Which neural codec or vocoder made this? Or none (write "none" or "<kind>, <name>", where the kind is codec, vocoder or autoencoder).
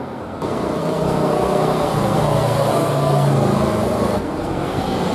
codec, SNAC